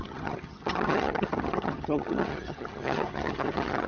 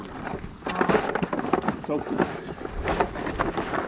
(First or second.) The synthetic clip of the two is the first